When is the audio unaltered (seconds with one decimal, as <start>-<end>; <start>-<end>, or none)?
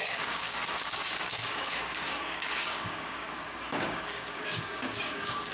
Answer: none